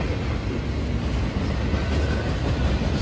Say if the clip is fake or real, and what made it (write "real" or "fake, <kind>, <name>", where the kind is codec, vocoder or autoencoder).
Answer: real